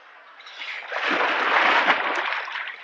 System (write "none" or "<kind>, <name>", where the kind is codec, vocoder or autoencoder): none